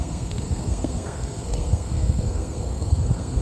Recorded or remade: remade